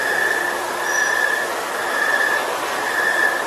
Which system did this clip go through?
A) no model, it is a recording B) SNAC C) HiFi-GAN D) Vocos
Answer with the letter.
A